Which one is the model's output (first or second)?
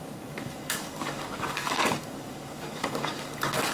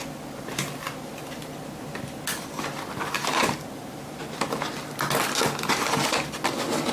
first